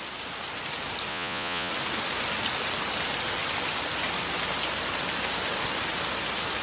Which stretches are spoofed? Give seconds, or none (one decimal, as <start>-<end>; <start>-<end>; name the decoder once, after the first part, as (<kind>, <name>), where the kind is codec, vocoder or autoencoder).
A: 1.1-1.7 (vocoder, Vocos)